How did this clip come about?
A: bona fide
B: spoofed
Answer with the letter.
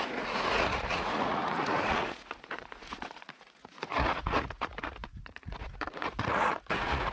B